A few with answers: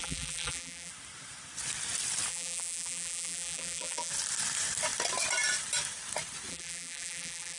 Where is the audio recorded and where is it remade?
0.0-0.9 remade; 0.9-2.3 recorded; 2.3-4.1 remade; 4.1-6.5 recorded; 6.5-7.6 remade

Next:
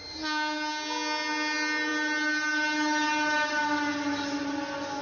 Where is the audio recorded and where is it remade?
0.0-5.0 recorded

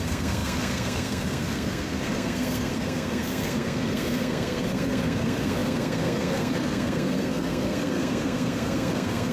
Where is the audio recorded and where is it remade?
0.0-9.3 remade

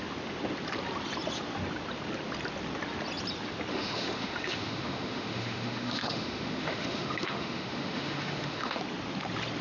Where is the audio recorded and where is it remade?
0.0-3.7 recorded; 3.7-8.8 remade; 8.8-9.6 recorded